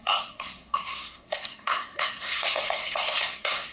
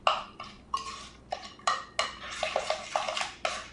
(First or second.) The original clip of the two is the second